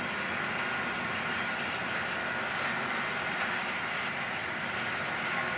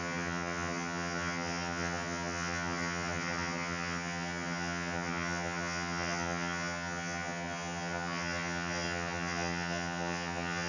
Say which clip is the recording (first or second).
first